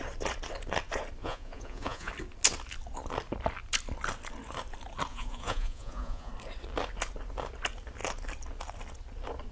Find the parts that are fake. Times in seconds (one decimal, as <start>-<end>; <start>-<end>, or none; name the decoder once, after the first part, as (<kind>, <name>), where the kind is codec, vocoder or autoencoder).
1.2-2.1 (vocoder, Vocos); 5.1-6.3